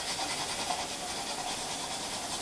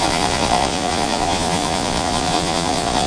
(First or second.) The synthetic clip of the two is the second